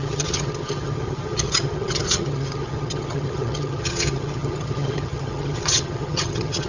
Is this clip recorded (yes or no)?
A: no